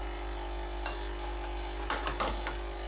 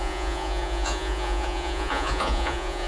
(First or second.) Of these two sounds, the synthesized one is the second